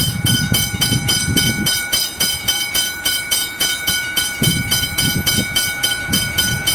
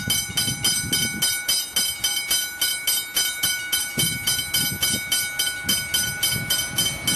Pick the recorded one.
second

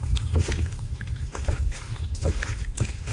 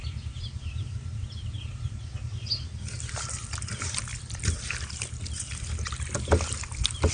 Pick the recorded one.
second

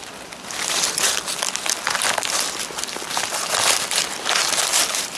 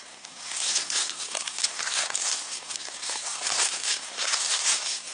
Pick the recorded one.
first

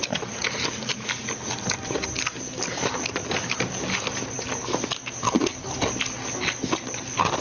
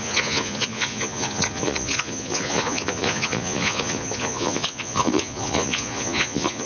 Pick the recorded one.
first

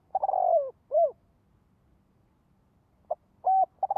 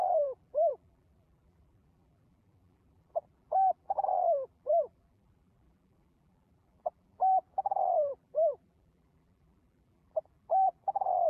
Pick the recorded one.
first